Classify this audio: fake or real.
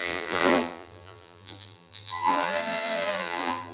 fake